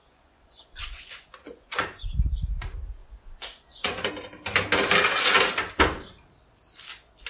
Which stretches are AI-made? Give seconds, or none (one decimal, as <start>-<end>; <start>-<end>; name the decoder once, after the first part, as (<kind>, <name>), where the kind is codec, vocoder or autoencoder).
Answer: 0.0-2.3 (vocoder, Vocos); 3.0-4.1